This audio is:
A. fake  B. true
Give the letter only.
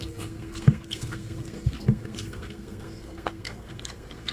A